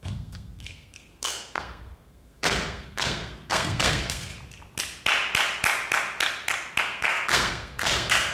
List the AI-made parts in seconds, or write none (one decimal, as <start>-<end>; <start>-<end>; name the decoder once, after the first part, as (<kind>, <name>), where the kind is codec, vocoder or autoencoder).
0.0-4.3 (codec, SNAC); 6.8-8.3